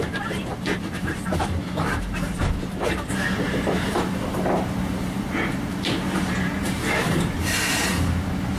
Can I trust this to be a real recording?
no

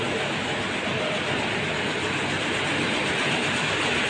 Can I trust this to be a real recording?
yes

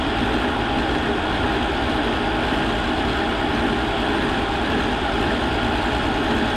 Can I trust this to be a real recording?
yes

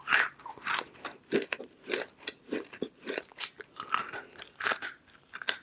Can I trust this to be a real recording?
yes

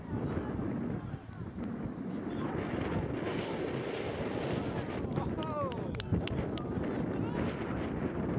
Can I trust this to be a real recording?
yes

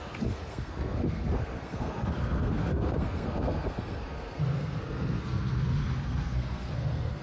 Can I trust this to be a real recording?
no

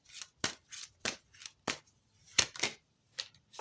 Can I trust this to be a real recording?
yes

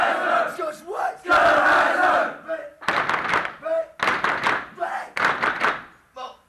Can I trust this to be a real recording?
yes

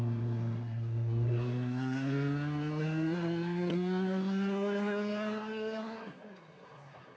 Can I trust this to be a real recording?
no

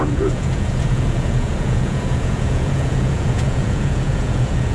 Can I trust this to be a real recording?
no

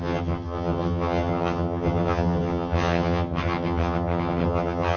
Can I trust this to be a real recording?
no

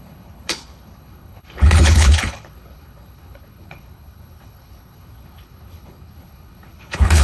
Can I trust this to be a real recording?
no